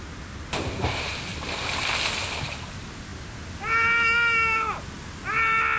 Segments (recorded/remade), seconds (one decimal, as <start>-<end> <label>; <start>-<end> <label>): 0.0-5.8 recorded